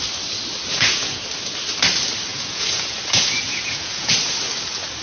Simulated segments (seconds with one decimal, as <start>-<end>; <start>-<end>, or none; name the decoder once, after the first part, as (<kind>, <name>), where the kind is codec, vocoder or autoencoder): 0.7-1.2 (vocoder, Vocos); 2.3-4.1